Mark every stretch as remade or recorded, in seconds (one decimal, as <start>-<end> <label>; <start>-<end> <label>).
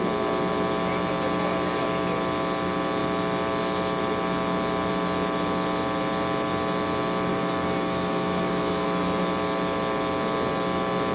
0.0-7.3 recorded; 7.3-9.2 remade; 9.2-11.1 recorded